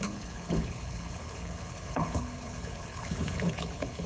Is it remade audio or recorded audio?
remade